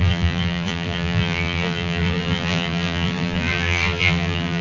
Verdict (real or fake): fake